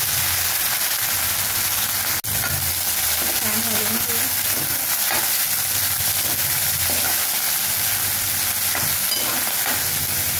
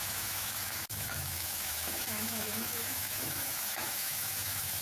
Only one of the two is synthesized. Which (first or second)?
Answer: second